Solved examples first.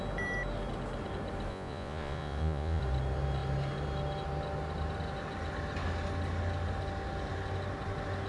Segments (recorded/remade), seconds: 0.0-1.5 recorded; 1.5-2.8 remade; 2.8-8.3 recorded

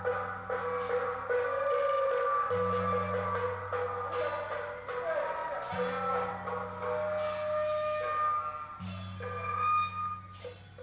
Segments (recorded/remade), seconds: 0.0-10.8 recorded

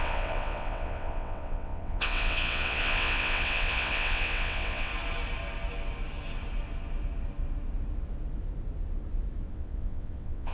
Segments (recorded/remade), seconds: 0.0-4.9 remade; 4.9-9.5 recorded; 9.5-10.5 remade

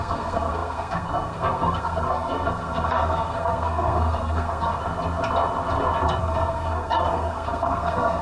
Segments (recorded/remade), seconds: 0.0-4.8 remade; 4.8-6.2 recorded; 6.2-8.2 remade

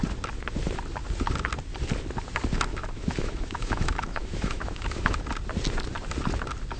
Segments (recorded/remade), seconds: 0.0-2.7 recorded; 2.7-5.2 remade; 5.2-6.8 recorded

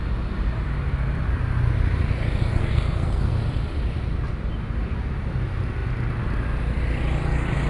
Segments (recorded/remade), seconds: 0.0-2.6 recorded; 2.6-3.4 remade; 3.4-7.7 recorded

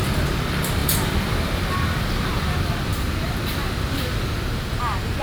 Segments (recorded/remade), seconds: 0.0-0.8 recorded; 0.8-1.6 remade; 1.6-5.2 recorded

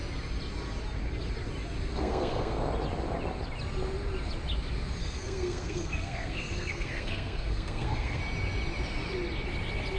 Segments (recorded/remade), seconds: 0.0-1.9 recorded; 1.9-2.6 remade; 2.6-5.0 recorded; 5.0-8.2 remade; 8.2-10.0 recorded